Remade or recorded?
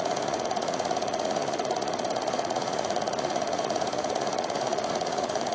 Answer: remade